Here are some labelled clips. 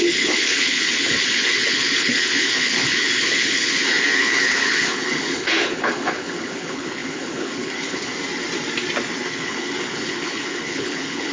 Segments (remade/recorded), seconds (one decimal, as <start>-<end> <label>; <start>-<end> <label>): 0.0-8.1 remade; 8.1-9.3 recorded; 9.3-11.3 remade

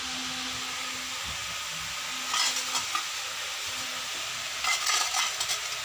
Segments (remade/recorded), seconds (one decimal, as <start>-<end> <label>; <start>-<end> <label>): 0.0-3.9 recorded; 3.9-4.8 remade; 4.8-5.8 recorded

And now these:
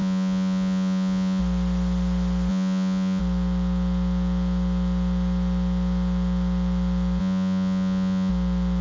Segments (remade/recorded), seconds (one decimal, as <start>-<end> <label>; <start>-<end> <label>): 0.0-1.4 remade; 1.4-2.5 recorded; 2.5-3.2 remade; 3.2-7.2 recorded; 7.2-8.3 remade; 8.3-8.8 recorded